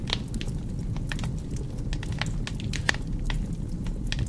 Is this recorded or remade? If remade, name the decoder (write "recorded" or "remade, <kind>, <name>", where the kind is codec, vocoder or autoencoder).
recorded